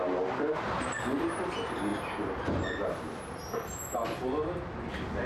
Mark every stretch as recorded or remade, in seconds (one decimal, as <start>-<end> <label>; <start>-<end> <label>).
0.0-5.3 recorded